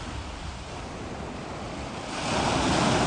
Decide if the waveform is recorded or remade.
recorded